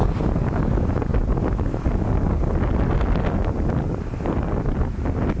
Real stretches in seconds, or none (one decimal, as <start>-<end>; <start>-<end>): 0.0-5.4

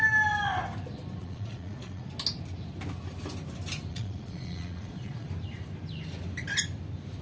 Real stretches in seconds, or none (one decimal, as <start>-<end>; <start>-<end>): 0.0-1.2; 2.1-3.9; 5.3-7.2